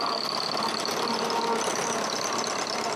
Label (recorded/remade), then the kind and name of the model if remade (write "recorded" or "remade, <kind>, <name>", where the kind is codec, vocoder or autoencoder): recorded